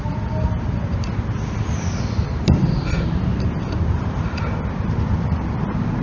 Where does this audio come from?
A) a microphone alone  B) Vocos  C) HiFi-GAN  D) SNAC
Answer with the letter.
A